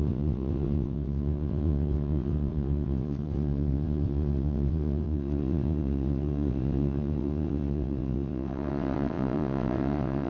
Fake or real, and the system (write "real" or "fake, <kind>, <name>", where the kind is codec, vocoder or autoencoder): fake, vocoder, WaveNeXt